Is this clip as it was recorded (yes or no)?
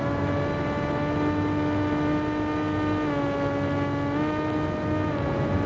yes